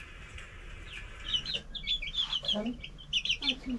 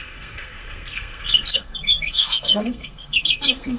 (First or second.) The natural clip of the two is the first